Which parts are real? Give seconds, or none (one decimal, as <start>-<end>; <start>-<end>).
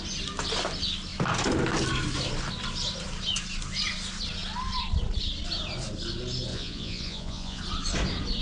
0.0-6.5; 7.6-8.4